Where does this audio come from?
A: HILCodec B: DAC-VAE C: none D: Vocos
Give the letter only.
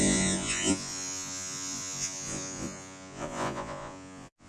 D